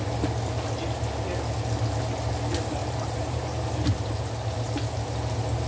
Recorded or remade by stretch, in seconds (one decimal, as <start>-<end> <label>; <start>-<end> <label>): 0.0-2.8 recorded; 2.8-4.2 remade; 4.2-5.7 recorded